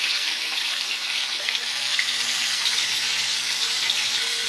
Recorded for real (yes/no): no